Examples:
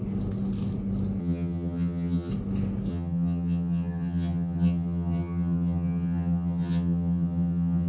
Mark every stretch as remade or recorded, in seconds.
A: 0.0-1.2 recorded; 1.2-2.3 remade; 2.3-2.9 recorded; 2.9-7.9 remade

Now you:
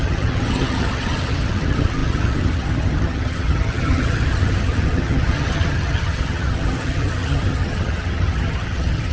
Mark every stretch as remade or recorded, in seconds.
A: 0.0-9.1 remade

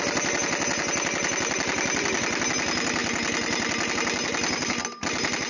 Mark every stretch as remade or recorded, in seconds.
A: 0.0-5.5 recorded

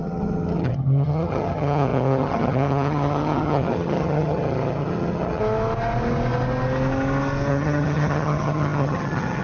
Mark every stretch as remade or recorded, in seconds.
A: 0.0-5.4 remade; 5.4-7.5 recorded; 7.5-9.4 remade